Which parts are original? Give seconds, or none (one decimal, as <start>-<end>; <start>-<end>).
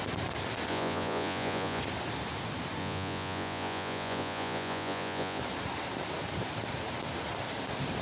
0.0-0.7; 1.8-2.8; 5.4-8.0